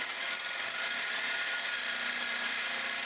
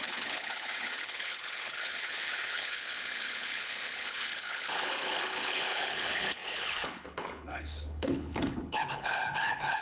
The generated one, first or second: second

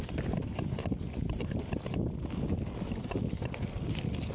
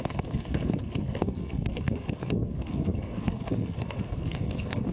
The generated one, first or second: second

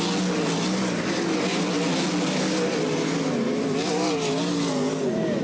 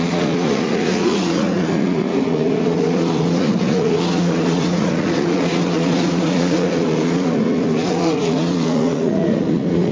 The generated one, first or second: second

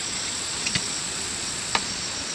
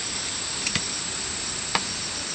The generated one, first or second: first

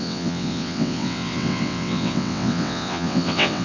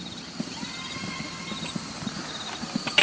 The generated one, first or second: first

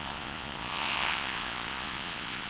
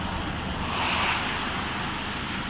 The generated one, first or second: first